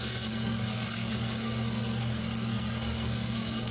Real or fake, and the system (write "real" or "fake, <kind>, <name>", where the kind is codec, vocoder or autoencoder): fake, codec, SNAC